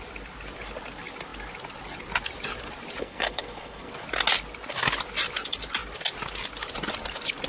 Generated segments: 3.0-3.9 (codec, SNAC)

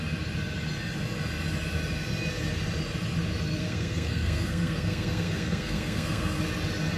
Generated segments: 3.6-6.4 (codec, SNAC)

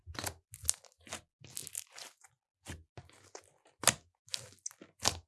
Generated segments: none